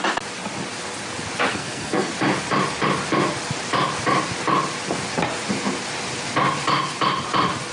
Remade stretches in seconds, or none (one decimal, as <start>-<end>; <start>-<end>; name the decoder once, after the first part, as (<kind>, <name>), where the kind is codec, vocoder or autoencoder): 1.5-2.1 (codec, SNAC)